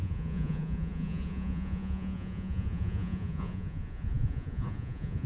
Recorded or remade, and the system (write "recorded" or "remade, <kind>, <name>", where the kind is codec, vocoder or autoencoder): remade, vocoder, Vocos